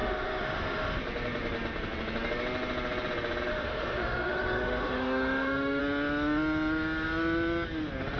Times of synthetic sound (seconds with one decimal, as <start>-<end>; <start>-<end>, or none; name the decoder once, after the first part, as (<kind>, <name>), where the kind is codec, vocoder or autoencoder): 0.0-1.0 (autoencoder, DAC-VAE); 3.5-5.8